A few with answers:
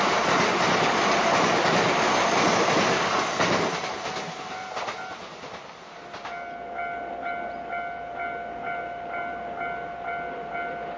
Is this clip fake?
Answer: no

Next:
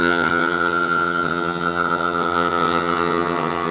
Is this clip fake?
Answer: yes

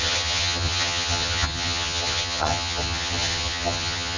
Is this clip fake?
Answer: yes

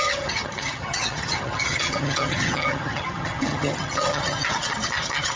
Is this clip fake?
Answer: yes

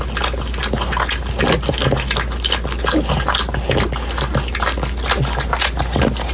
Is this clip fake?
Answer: no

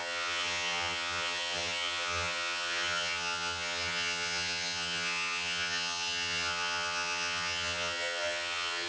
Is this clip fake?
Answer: yes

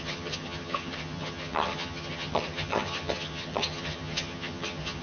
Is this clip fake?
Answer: yes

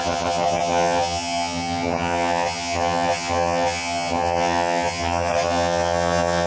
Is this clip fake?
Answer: yes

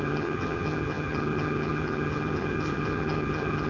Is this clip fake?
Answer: yes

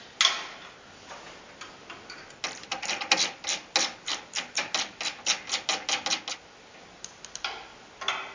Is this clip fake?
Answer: no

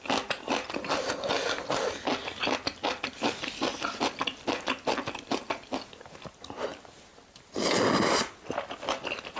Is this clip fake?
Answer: no